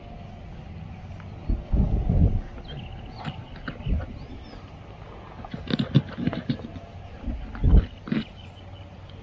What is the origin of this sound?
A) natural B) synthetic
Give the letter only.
A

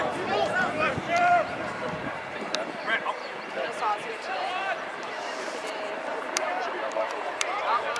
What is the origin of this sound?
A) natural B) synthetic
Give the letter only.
B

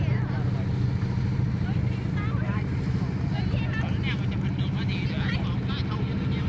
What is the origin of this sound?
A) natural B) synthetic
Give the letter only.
A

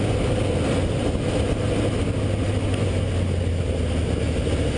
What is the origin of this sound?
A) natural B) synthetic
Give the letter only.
A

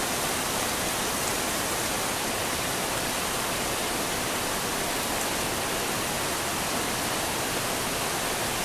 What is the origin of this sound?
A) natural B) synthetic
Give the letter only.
A